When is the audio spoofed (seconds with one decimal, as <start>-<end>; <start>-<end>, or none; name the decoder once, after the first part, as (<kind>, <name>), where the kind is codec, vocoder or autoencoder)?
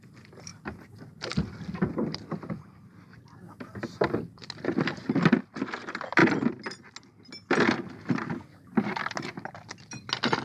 none